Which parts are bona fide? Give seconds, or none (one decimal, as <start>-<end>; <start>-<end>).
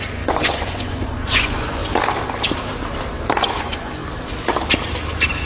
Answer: 1.8-3.6; 4.0-5.5